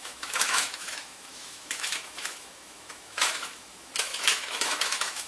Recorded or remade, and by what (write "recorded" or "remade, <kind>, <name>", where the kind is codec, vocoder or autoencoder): remade, autoencoder, DAC-VAE